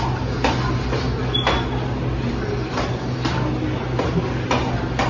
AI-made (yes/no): no